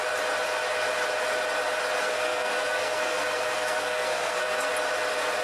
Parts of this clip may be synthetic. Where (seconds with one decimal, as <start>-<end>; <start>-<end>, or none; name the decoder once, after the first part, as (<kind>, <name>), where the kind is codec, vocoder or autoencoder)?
2.0-4.7 (codec, SNAC)